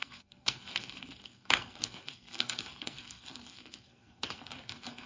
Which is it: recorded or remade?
remade